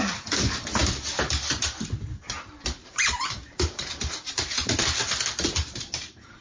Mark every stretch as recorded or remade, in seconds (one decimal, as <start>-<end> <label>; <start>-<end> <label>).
0.0-2.8 recorded; 2.8-5.0 remade; 5.0-5.5 recorded; 5.5-6.4 remade